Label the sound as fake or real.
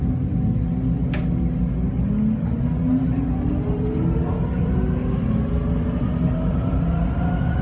real